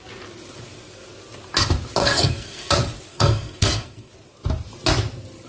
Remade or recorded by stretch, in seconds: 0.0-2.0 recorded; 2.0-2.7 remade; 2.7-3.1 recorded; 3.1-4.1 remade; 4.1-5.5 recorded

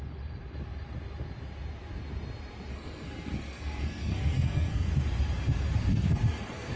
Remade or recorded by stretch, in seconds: 0.0-2.7 recorded; 2.7-4.9 remade; 4.9-5.9 recorded; 5.9-6.8 remade

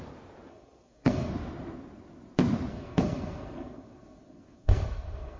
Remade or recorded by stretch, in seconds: 0.0-0.5 recorded; 0.5-1.3 remade; 1.3-2.7 recorded; 2.7-5.4 remade

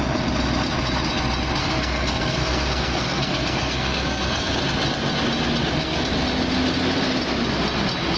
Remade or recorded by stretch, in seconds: 0.0-1.6 recorded; 1.6-4.6 remade; 4.6-5.6 recorded; 5.6-6.1 remade; 6.1-8.2 recorded

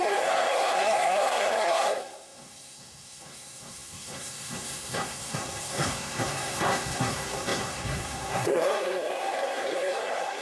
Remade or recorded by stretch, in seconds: 0.0-10.4 remade

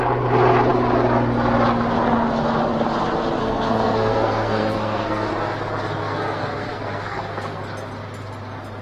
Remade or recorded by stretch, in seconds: 0.0-3.4 recorded; 3.4-5.3 remade; 5.3-6.0 recorded; 6.0-7.6 remade; 7.6-8.8 recorded